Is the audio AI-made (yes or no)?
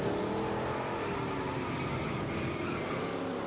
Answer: no